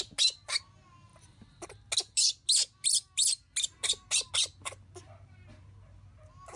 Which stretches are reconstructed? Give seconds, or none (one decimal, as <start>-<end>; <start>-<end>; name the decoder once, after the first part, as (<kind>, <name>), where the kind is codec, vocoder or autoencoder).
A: none